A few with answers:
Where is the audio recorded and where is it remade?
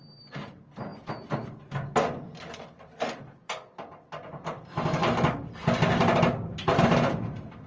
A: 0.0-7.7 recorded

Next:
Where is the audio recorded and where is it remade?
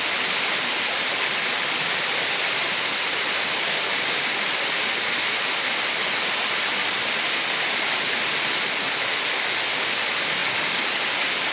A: 0.0-11.5 recorded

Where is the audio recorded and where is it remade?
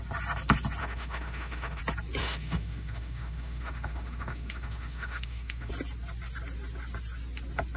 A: 0.0-0.8 recorded; 0.8-1.8 remade; 1.8-2.2 recorded; 2.2-5.7 remade; 5.7-7.8 recorded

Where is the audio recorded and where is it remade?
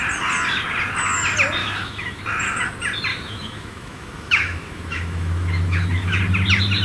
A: 0.0-1.6 recorded; 1.6-2.2 remade; 2.2-3.1 recorded; 3.1-6.2 remade; 6.2-6.8 recorded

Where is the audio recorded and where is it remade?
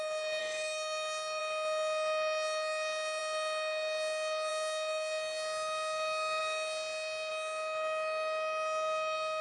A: 0.0-0.4 recorded; 0.4-1.4 remade; 1.4-9.4 recorded